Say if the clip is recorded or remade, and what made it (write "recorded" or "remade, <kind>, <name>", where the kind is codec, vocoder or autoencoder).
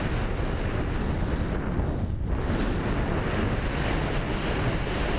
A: recorded